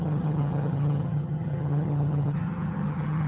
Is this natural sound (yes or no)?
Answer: no